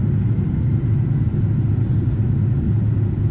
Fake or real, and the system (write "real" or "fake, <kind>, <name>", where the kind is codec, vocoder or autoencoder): real